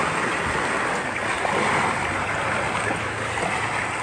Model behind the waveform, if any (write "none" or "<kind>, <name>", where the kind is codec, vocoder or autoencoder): none